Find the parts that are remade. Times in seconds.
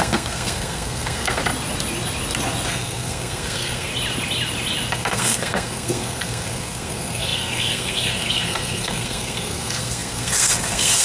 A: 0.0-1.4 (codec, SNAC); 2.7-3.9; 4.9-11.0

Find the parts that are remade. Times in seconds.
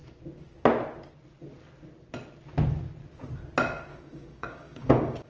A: 3.9-5.3 (codec, DAC)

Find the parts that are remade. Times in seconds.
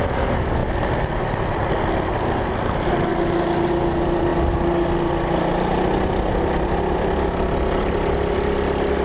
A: none